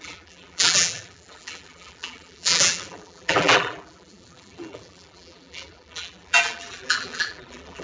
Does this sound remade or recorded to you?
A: remade